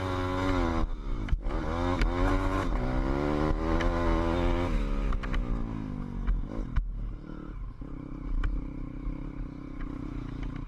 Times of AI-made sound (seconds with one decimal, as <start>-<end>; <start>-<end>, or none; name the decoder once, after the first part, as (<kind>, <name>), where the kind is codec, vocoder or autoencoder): none